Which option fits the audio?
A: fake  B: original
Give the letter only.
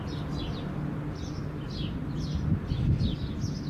B